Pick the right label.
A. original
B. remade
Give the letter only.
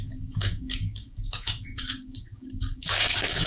B